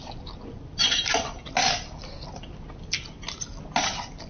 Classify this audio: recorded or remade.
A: recorded